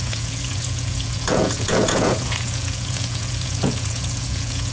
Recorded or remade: remade